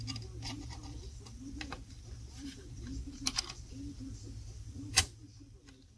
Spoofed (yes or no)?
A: yes